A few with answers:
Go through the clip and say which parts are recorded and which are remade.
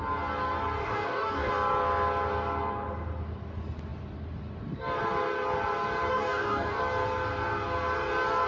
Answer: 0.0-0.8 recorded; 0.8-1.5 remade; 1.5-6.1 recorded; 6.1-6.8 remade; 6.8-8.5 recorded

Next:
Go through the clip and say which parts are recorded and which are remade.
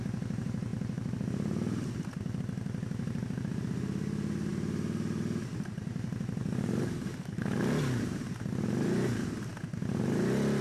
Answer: 0.0-6.4 recorded; 6.4-7.6 remade; 7.6-10.6 recorded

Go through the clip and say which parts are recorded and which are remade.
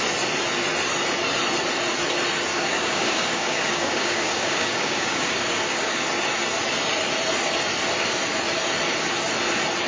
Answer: 0.0-2.5 recorded; 2.5-5.9 remade; 5.9-9.9 recorded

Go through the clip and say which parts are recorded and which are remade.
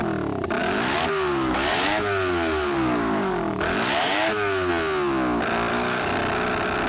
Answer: 0.0-0.6 recorded; 0.6-4.7 remade; 4.7-5.7 recorded; 5.7-6.2 remade; 6.2-6.9 recorded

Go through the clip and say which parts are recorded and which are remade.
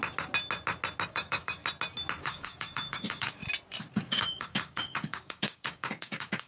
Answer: 0.0-1.1 recorded; 1.1-1.6 remade; 1.6-2.2 recorded; 2.2-3.4 remade; 3.4-3.9 recorded; 3.9-6.5 remade